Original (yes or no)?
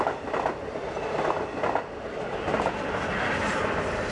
yes